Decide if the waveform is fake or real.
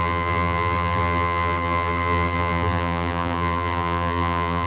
fake